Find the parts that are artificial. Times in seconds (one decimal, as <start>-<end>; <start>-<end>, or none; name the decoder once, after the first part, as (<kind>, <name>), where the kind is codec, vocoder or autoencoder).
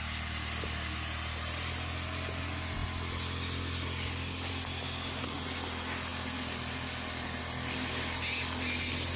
none